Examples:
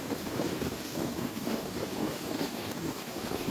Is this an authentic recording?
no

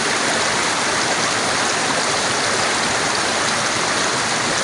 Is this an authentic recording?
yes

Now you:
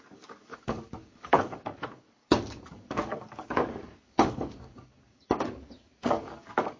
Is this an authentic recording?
no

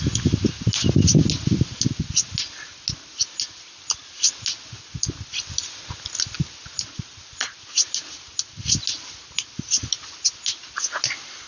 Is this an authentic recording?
yes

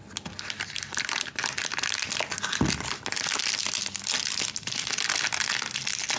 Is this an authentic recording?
yes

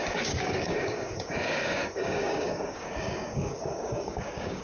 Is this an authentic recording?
no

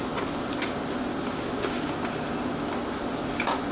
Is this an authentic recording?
yes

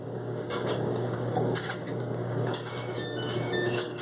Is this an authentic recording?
no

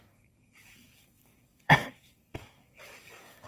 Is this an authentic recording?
no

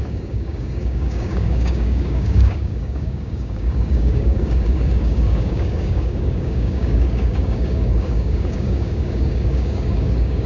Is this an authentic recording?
no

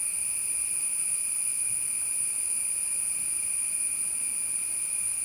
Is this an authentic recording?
yes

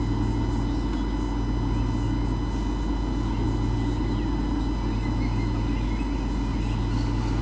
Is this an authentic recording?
yes